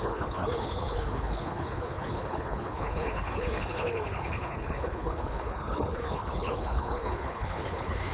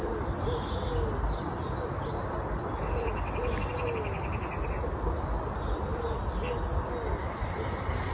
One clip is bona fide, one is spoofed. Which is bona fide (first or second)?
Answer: second